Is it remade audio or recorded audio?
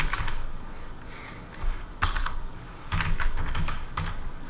remade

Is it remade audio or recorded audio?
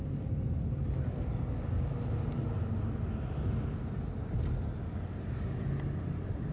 recorded